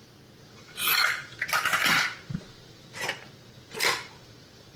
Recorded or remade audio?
recorded